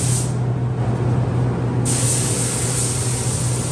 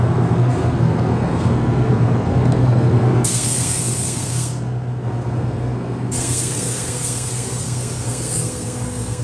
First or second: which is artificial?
second